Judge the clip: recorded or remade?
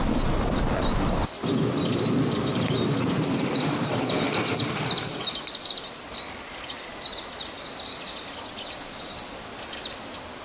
recorded